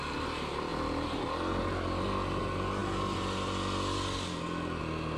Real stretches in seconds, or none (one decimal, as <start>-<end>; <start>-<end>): 0.0-5.2